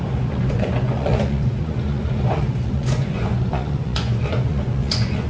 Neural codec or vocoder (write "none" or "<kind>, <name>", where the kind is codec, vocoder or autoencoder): vocoder, Vocos